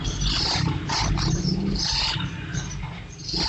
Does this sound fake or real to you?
real